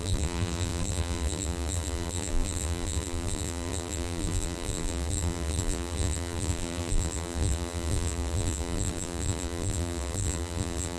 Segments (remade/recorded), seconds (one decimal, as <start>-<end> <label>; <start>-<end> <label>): 0.0-11.0 remade